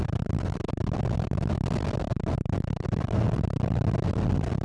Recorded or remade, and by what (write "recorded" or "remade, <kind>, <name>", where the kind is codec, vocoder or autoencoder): recorded